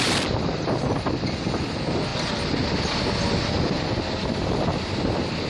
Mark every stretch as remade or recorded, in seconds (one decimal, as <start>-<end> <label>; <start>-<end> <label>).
0.0-2.1 remade; 2.1-5.5 recorded